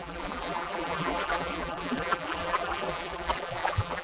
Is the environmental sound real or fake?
fake